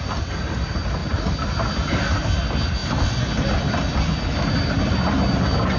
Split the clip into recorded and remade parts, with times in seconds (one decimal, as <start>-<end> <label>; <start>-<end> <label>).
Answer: 0.0-5.8 recorded